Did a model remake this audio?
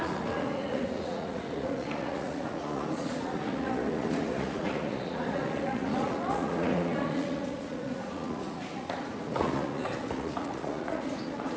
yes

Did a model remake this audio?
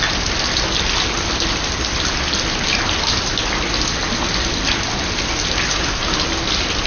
no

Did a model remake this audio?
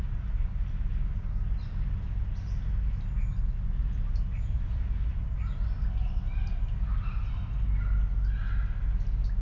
no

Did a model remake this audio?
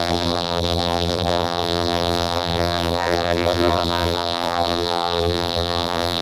yes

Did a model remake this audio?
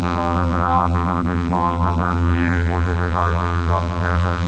yes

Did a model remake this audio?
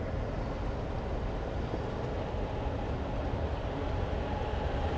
no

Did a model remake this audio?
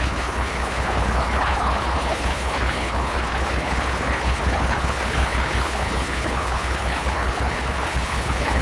yes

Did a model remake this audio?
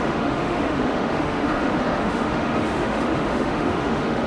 yes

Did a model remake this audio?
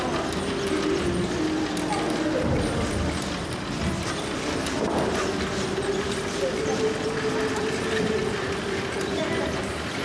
no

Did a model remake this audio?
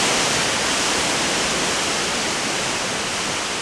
no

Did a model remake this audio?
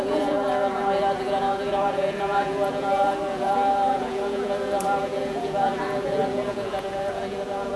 yes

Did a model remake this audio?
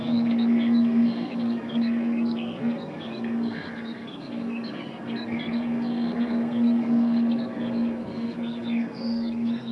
yes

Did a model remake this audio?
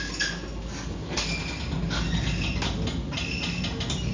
no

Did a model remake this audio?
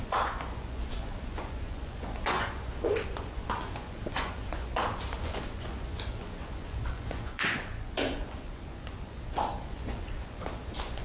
yes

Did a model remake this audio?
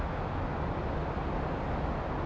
no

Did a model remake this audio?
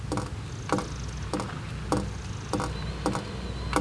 no